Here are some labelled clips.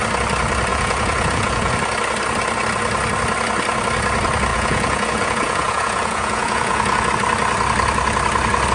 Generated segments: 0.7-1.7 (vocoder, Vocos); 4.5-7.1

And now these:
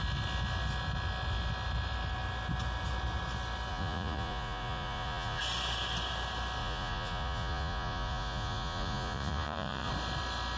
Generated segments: 3.7-5.4 (vocoder, Vocos); 6.6-9.9